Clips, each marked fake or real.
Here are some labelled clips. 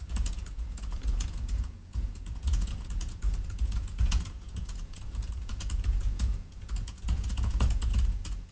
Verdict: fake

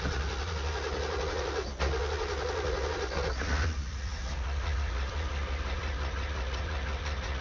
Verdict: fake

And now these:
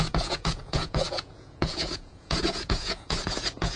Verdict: fake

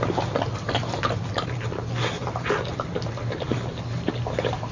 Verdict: real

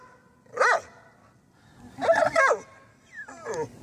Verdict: real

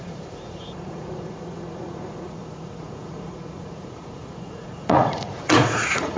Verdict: fake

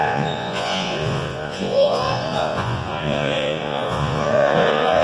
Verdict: fake